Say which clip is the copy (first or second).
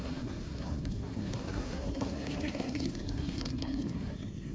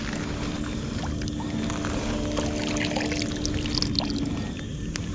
first